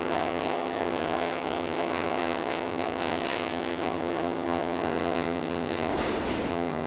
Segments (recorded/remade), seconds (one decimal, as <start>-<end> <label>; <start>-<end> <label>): 0.0-5.9 remade; 5.9-6.5 recorded; 6.5-6.9 remade